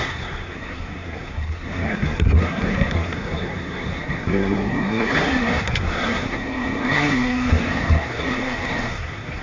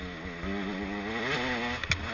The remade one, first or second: first